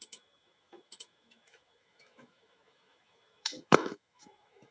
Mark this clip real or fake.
fake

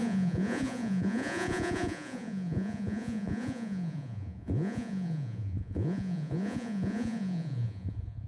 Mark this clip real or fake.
fake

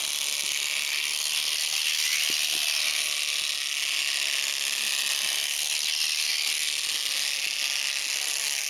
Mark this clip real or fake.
real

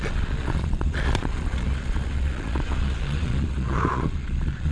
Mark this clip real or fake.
fake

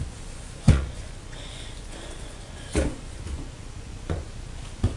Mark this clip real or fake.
fake